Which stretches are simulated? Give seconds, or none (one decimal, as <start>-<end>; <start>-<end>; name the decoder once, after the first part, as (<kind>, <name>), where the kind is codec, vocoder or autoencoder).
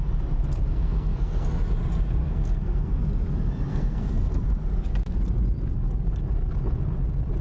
0.7-1.5 (codec, SNAC); 2.2-3.0; 3.7-4.3